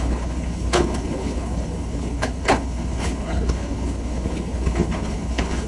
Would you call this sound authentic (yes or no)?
no